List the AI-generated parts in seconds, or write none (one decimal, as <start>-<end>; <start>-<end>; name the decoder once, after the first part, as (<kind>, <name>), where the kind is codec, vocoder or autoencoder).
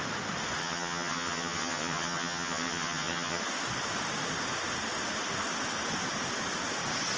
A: 0.6-3.4 (vocoder, HiFi-GAN)